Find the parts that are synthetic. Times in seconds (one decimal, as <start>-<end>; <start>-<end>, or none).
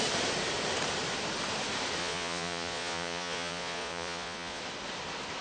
2.0-4.6